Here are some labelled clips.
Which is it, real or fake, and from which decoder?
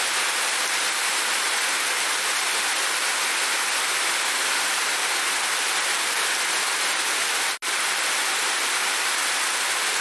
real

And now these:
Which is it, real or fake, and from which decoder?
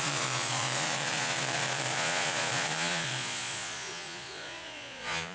fake, vocoder, Vocos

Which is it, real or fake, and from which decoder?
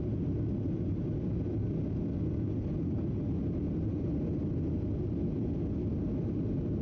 real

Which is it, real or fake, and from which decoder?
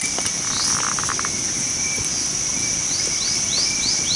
real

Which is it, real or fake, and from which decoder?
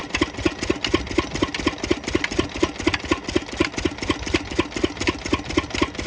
real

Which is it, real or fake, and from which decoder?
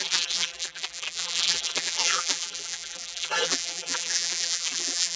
fake, vocoder, BigVGAN v2